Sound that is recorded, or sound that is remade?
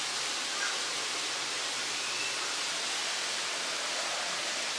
recorded